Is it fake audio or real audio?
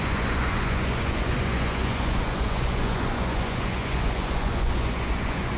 fake